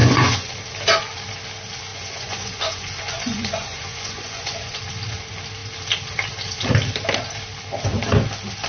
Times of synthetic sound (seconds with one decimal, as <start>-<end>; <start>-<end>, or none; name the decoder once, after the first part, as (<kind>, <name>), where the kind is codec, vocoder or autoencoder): 0.0-0.5 (vocoder, Vocos); 1.9-4.8

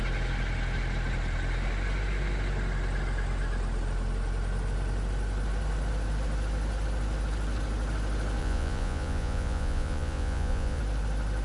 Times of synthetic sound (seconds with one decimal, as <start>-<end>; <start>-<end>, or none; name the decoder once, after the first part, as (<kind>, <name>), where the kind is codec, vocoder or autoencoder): 8.4-10.8 (vocoder, Vocos)

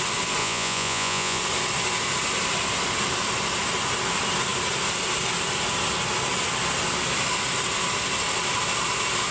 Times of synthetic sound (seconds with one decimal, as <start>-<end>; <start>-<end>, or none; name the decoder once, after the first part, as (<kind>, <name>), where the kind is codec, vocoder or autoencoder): 0.4-1.4 (vocoder, Vocos)

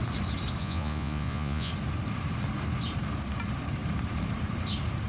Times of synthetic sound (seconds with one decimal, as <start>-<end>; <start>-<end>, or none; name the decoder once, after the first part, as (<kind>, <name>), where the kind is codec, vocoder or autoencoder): 0.6-1.7 (vocoder, Vocos)

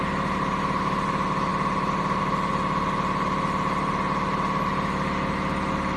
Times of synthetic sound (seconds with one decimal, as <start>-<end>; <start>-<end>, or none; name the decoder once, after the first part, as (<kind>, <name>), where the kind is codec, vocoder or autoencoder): none

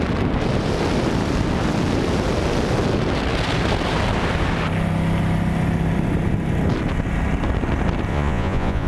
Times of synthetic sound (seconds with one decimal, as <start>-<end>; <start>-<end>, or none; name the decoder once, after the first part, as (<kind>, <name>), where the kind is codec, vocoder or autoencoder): 8.1-8.9 (vocoder, Vocos)

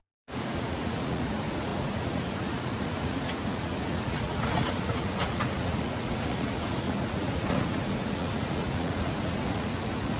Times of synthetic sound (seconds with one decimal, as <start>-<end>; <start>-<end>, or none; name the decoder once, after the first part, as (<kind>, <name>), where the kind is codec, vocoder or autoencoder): 0.0-10.2 (vocoder, Vocos)